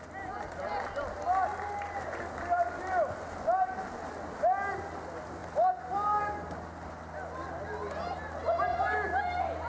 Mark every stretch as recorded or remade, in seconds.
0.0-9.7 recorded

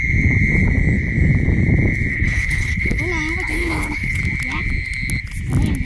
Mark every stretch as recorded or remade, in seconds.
0.0-2.1 recorded; 2.1-3.0 remade; 3.0-3.5 recorded; 3.5-4.2 remade; 4.2-5.8 recorded